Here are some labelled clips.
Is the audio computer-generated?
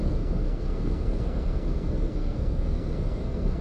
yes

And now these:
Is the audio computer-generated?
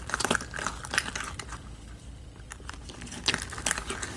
no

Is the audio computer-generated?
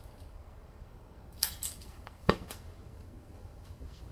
yes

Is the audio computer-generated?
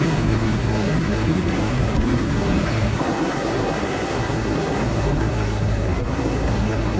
yes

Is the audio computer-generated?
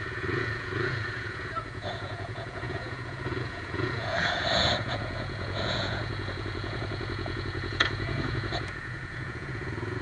yes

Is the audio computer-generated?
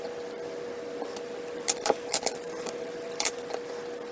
no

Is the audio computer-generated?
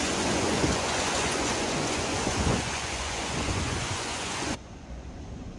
yes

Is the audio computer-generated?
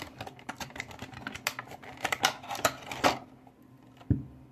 no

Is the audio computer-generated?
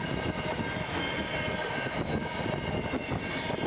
no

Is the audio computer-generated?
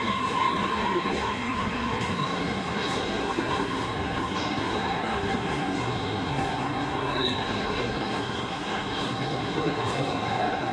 yes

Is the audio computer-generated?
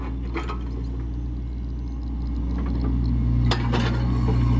no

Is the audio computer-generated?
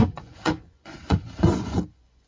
yes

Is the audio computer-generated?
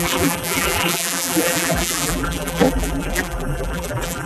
yes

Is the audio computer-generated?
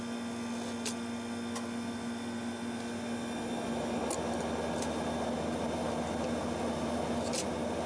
no